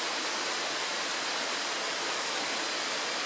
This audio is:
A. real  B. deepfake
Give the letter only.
A